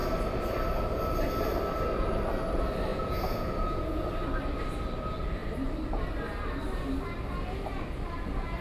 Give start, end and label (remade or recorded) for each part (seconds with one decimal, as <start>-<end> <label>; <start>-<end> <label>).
0.0-2.9 recorded; 2.9-4.1 remade; 4.1-8.6 recorded